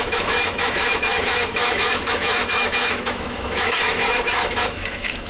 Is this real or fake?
fake